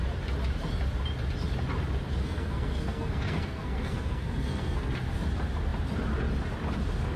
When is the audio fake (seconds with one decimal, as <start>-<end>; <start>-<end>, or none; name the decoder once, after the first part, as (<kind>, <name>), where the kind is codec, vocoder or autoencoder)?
2.2-4.9 (codec, SNAC)

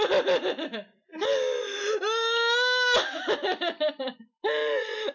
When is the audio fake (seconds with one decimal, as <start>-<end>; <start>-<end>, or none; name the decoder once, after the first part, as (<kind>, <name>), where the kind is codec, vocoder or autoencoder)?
none

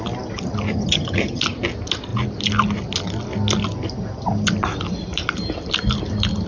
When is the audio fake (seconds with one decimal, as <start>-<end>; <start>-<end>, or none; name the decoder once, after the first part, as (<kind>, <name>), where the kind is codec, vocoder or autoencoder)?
0.7-1.4 (vocoder, HiFi-GAN)

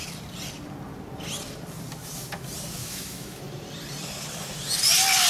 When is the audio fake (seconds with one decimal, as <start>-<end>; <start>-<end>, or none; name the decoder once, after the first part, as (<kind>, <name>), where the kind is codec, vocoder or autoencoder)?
2.8-3.4 (autoencoder, DAC-VAE)

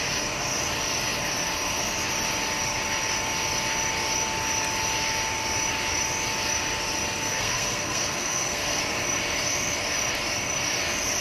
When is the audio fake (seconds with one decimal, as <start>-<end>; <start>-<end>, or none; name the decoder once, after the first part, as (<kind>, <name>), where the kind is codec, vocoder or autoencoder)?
7.2-8.8 (codec, SNAC)

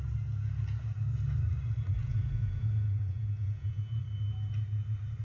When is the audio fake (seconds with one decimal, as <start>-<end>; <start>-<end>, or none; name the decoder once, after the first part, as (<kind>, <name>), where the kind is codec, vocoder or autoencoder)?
2.0-4.0 (vocoder, Vocos)

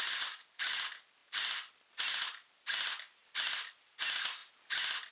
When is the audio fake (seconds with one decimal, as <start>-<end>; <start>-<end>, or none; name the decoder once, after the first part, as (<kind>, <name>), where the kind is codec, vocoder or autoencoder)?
3.2-3.9 (vocoder, BigVGAN v2)

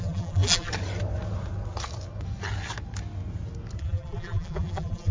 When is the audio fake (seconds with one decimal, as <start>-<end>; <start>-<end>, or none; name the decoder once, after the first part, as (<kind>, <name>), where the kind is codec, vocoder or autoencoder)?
0.0-0.7 (vocoder, BigVGAN v2); 3.8-5.1